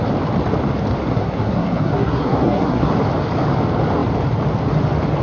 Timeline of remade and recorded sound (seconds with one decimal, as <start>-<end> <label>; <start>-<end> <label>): 0.0-1.1 recorded; 1.1-2.9 remade; 2.9-5.2 recorded